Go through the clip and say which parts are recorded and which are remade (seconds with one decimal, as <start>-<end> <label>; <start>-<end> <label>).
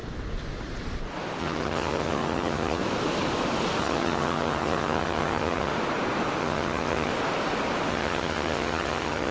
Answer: 0.0-1.4 recorded; 1.4-2.8 remade; 2.8-3.8 recorded; 3.8-5.7 remade; 5.7-6.4 recorded; 6.4-7.1 remade; 7.1-7.9 recorded; 7.9-9.3 remade